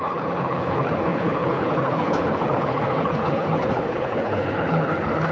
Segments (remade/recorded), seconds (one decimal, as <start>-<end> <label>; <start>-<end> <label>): 0.0-5.3 remade